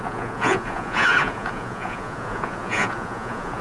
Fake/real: fake